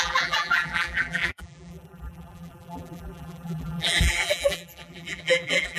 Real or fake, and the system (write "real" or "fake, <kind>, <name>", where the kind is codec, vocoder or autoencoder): fake, vocoder, BigVGAN v2